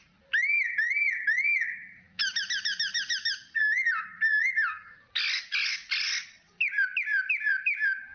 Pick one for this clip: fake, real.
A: real